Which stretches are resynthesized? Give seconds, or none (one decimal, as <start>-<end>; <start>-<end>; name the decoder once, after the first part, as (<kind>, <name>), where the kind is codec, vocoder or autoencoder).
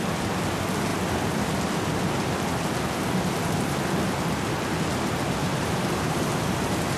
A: 5.4-6.3 (vocoder, BigVGAN v2)